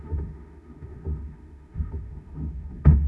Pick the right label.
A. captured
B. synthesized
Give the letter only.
B